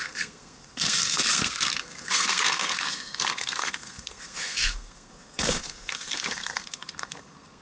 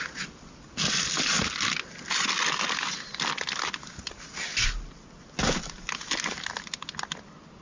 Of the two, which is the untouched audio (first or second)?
second